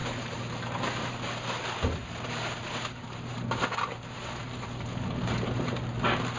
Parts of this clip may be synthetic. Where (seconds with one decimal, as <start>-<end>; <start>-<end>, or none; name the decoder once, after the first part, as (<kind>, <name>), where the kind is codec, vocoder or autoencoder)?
0.0-1.2 (vocoder, BigVGAN v2); 2.0-5.8